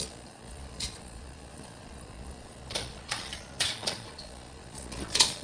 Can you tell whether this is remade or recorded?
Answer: remade